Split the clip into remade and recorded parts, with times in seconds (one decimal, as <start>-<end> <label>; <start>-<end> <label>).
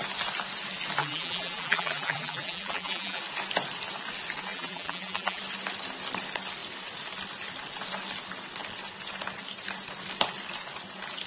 0.0-1.0 recorded; 1.0-3.2 remade; 3.2-4.5 recorded; 4.5-5.4 remade; 5.4-11.3 recorded